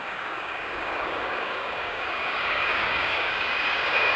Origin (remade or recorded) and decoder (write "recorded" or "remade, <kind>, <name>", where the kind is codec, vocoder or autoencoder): remade, codec, DAC